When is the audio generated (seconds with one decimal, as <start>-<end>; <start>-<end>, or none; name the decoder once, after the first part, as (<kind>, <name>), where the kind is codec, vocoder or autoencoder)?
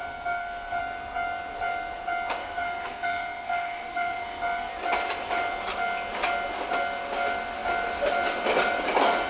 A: 0.0-0.8 (codec, SNAC); 2.4-4.7